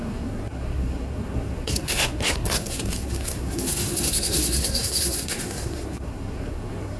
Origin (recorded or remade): remade